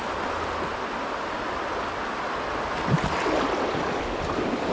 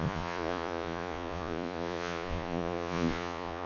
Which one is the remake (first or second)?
second